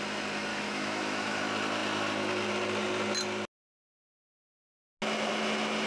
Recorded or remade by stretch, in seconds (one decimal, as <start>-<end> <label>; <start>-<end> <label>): 0.0-0.5 recorded; 0.5-1.4 remade; 1.4-5.9 recorded